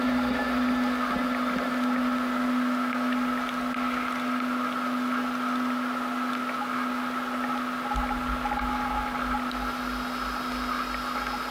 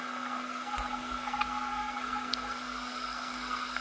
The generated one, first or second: second